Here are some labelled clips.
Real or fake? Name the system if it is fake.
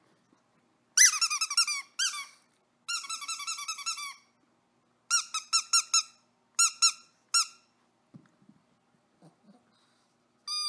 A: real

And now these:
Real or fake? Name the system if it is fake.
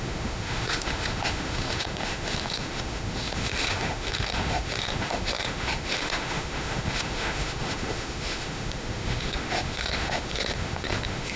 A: fake, autoencoder, DAC-VAE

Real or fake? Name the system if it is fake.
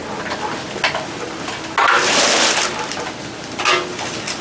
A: real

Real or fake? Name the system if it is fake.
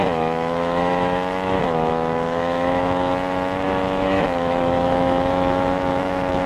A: fake, autoencoder, DAC-VAE